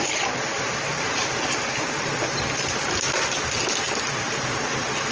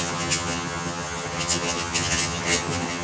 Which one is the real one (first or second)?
first